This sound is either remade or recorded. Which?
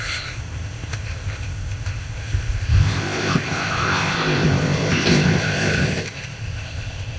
remade